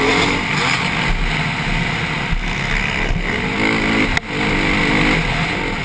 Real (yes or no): yes